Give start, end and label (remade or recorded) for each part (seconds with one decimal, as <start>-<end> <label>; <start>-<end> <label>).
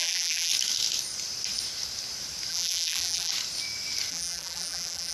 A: 0.0-0.5 remade; 0.5-2.5 recorded; 2.5-3.3 remade; 3.3-4.1 recorded; 4.1-5.1 remade